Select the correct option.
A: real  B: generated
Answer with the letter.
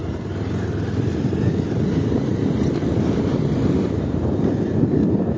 A